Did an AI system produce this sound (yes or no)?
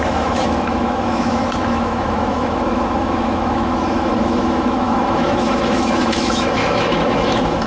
yes